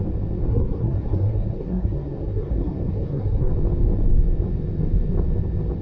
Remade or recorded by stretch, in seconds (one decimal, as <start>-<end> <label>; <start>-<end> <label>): 0.0-0.5 recorded; 0.5-3.5 remade; 3.5-5.8 recorded